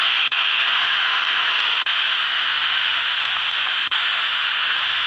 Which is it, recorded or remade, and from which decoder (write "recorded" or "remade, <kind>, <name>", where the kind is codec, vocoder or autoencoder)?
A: remade, autoencoder, DAC-VAE